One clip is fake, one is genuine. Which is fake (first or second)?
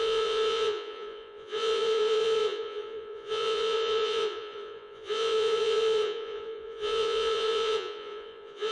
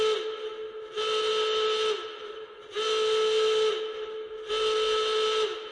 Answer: first